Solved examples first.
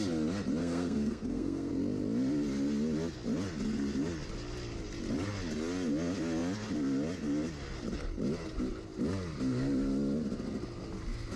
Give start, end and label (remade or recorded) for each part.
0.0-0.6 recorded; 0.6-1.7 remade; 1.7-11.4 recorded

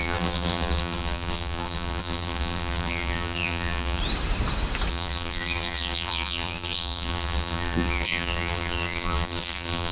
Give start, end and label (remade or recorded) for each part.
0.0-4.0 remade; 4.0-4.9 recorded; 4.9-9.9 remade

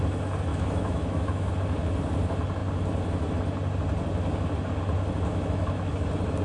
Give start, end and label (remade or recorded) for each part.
0.0-0.5 recorded; 0.5-1.5 remade; 1.5-5.3 recorded; 5.3-5.9 remade; 5.9-6.4 recorded

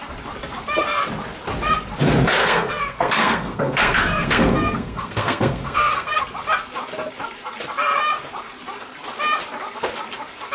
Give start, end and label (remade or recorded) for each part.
0.0-2.4 recorded; 2.4-6.2 remade; 6.2-10.5 recorded

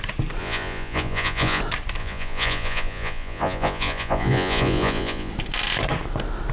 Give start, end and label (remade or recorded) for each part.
0.0-0.4 recorded; 0.4-1.6 remade; 1.6-2.0 recorded; 2.0-5.3 remade; 5.3-6.5 recorded

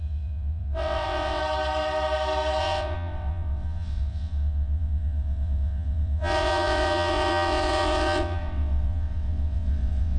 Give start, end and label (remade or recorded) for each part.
0.0-1.4 remade; 1.4-2.6 recorded; 2.6-10.2 remade

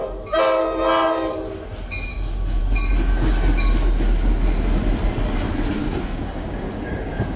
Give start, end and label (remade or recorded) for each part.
0.0-2.1 recorded; 2.1-2.6 remade; 2.6-5.8 recorded; 5.8-7.4 remade

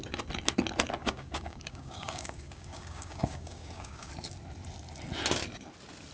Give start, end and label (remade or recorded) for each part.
0.0-1.0 recorded; 1.0-4.1 remade; 4.1-6.1 recorded